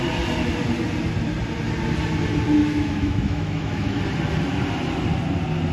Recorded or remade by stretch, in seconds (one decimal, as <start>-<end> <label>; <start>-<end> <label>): 0.0-2.6 recorded; 2.6-4.0 remade; 4.0-5.7 recorded